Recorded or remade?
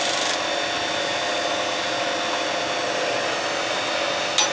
recorded